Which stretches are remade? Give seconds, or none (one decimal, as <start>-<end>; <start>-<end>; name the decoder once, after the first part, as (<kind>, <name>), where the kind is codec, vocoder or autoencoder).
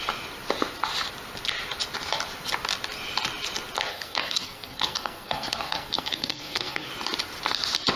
3.9-6.9 (codec, SNAC)